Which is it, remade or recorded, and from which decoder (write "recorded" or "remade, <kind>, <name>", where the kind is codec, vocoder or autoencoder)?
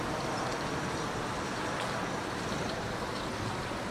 recorded